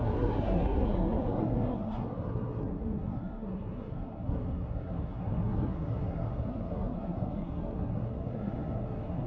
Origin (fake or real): fake